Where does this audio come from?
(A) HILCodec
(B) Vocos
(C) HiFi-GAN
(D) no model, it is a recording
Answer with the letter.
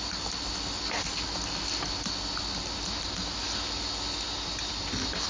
D